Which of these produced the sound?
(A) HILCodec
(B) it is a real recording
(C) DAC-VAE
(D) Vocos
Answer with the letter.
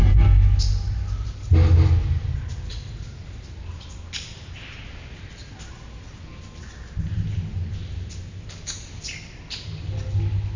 B